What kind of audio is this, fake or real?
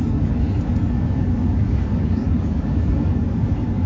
fake